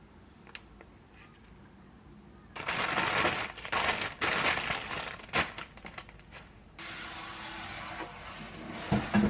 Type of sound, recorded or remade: recorded